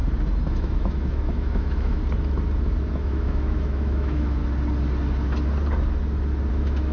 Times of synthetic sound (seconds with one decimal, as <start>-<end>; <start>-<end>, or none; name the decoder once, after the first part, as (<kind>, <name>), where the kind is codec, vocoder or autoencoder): 0.5-2.0 (autoencoder, DAC-VAE); 2.9-4.4; 6.5-6.9